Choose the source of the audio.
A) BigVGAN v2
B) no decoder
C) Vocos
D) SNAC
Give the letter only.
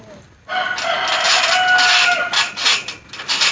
B